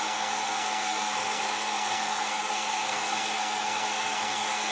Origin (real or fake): fake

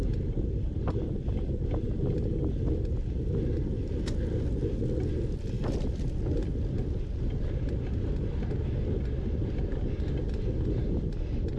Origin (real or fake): real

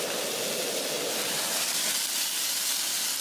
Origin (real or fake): real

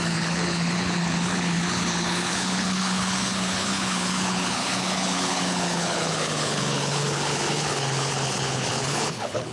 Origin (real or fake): fake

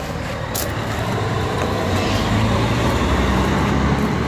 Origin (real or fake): real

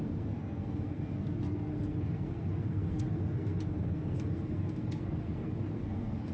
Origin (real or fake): fake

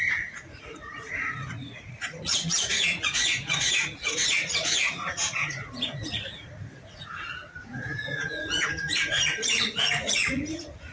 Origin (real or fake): fake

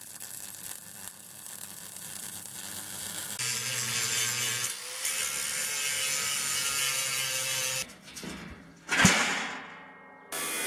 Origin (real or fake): real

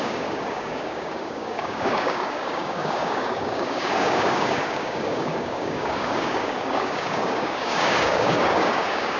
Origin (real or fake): fake